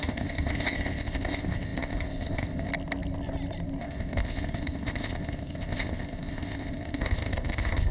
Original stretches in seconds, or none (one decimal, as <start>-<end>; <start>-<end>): 2.7-3.8